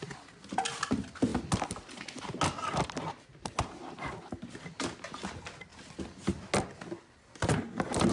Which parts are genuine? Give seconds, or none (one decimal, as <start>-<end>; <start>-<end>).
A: 0.0-8.1